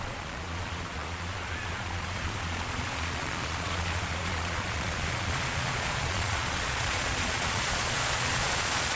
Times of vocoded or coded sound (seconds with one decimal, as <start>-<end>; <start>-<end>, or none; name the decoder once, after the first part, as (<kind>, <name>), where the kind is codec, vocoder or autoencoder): 0.0-9.0 (vocoder, Vocos)